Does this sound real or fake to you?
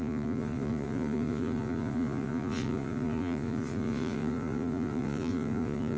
fake